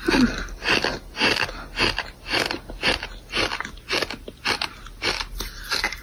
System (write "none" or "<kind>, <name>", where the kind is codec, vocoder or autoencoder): none